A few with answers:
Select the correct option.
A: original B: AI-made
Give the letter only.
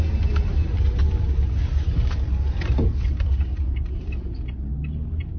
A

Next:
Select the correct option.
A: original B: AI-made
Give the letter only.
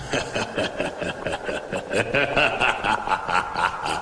A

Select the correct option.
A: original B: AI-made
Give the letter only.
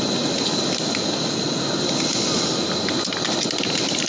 A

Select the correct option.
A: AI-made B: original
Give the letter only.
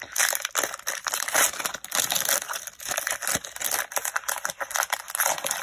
B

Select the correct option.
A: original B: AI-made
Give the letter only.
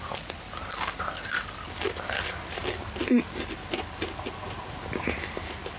A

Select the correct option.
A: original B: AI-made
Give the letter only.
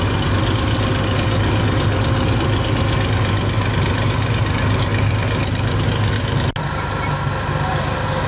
A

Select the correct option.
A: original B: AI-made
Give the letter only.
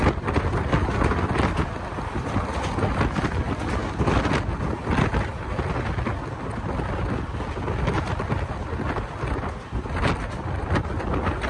A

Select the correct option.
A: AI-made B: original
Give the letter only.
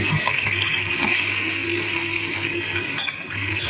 A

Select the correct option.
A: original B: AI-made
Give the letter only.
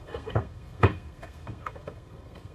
B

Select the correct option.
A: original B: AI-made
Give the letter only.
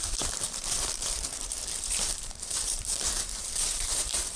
B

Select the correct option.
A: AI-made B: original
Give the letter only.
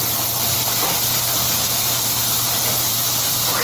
A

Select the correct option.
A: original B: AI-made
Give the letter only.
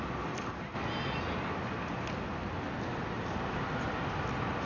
A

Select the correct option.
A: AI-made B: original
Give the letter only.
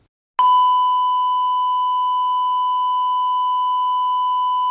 B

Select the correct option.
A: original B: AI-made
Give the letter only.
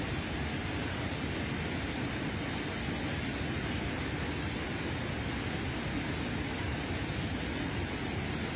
A